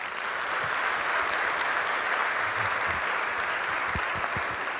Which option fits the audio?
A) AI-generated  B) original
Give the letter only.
B